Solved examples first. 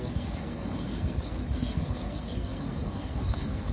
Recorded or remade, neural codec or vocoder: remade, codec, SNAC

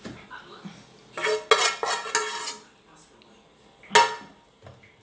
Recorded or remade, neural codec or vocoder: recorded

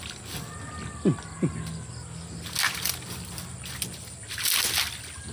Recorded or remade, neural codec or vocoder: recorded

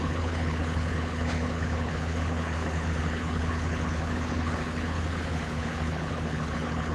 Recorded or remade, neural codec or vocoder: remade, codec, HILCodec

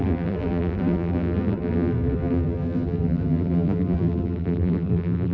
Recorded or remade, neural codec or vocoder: remade, vocoder, BigVGAN v2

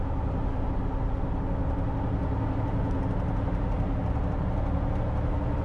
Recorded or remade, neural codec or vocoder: recorded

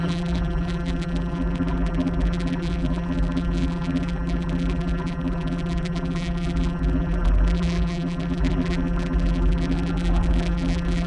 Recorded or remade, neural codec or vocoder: remade, vocoder, BigVGAN v2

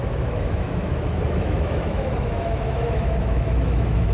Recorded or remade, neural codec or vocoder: remade, autoencoder, DAC-VAE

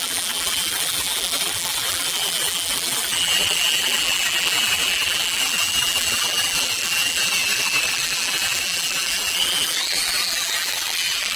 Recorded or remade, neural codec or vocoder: remade, vocoder, BigVGAN v2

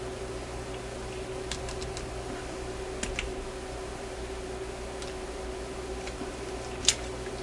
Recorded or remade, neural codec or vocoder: recorded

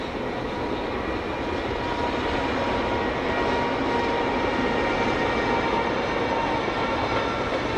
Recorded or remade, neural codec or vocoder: recorded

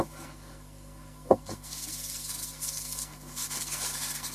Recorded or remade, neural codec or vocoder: remade, codec, SNAC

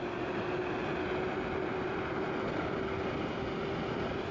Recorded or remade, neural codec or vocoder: recorded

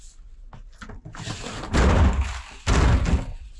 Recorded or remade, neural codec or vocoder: recorded